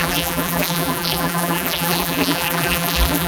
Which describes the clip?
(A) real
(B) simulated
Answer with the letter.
B